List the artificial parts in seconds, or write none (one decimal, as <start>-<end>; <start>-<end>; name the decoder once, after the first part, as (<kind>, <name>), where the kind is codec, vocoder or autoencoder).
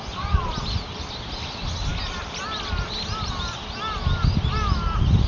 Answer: none